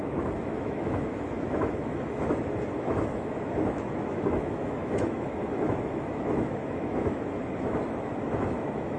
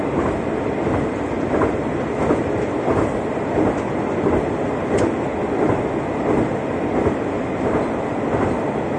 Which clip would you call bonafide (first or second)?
second